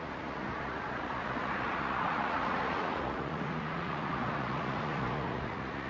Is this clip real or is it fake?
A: fake